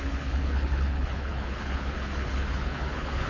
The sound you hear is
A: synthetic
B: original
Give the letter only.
A